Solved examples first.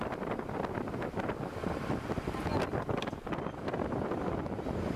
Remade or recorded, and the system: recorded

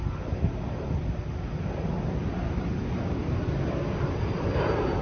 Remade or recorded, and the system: recorded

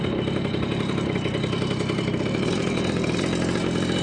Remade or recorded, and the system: remade, vocoder, BigVGAN v2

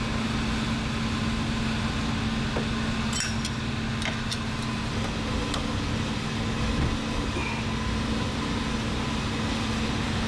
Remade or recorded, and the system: recorded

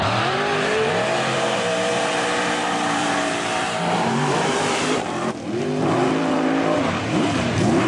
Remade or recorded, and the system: remade, vocoder, BigVGAN v2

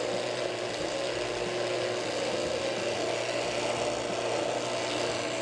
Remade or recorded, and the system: recorded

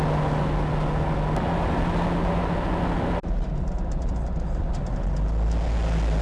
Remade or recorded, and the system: recorded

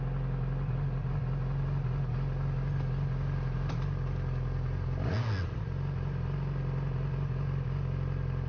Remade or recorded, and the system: recorded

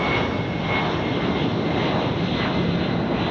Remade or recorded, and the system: recorded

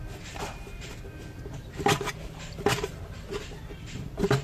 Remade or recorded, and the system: remade, vocoder, BigVGAN v2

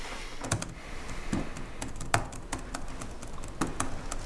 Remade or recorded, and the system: recorded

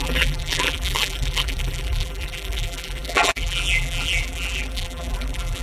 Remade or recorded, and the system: remade, vocoder, BigVGAN v2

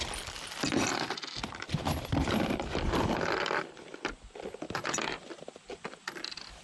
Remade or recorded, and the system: remade, vocoder, BigVGAN v2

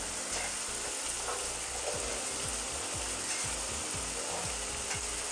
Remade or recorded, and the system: recorded